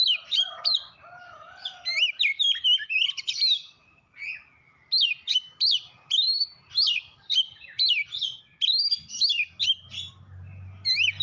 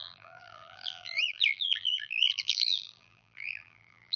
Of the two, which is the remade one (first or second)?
second